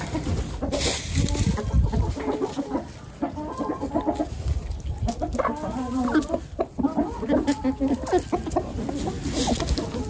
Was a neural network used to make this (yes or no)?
no